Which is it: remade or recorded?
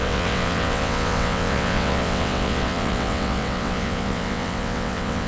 remade